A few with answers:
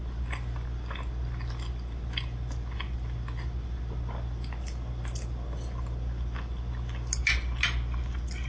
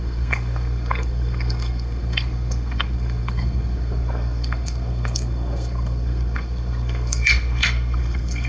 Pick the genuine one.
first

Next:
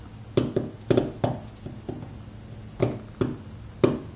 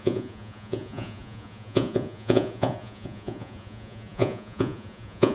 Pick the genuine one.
first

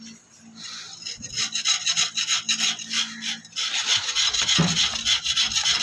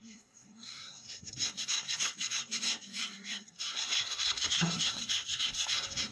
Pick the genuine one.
first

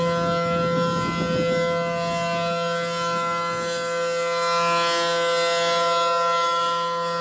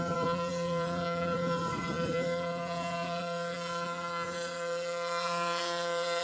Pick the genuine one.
first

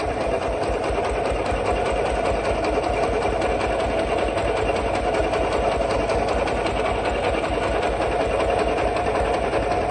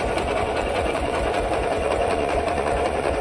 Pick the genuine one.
first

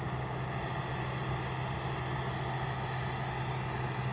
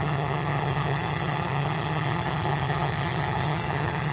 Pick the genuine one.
first